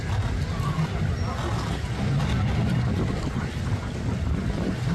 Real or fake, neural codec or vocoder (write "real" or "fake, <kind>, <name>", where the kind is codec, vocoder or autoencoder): real